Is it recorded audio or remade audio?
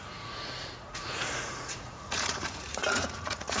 remade